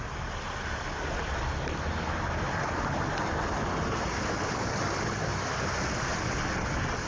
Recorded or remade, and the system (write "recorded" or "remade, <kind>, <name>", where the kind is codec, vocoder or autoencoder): recorded